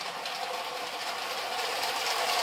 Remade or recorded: recorded